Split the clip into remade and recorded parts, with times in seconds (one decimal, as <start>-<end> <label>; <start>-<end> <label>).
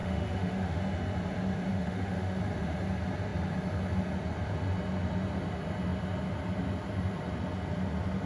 0.0-0.8 remade; 0.8-1.7 recorded; 1.7-2.4 remade; 2.4-8.3 recorded